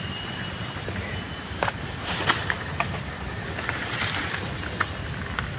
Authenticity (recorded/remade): recorded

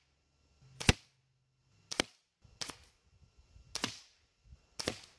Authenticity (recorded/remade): recorded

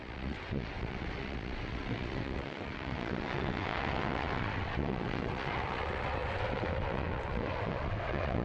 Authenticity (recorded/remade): remade